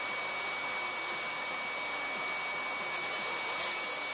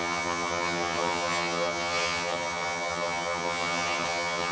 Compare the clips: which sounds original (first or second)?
first